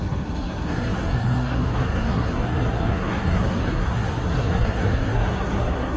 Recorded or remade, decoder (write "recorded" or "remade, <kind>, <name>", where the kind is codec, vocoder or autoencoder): remade, codec, SNAC